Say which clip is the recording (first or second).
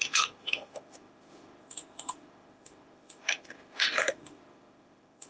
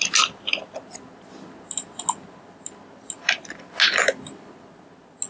second